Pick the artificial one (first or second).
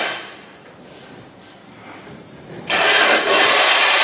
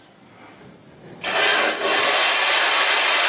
first